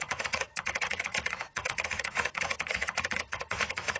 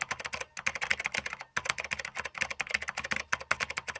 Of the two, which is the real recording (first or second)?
second